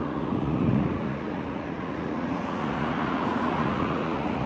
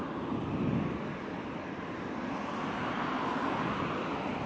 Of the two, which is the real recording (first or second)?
second